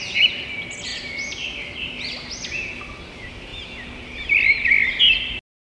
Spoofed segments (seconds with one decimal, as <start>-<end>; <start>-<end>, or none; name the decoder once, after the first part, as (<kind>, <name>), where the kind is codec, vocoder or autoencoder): none